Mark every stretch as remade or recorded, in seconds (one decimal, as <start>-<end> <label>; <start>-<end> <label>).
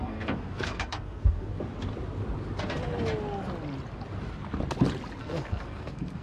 0.0-1.5 remade; 1.5-5.2 recorded; 5.2-6.2 remade